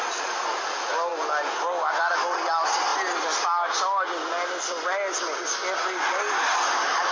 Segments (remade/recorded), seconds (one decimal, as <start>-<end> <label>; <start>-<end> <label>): 0.0-7.1 recorded